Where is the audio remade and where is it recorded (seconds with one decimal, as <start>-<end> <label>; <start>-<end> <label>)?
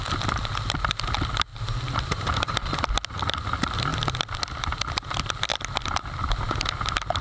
0.0-1.5 recorded; 1.5-2.7 remade; 2.7-7.2 recorded